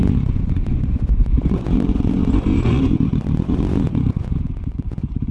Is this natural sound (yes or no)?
no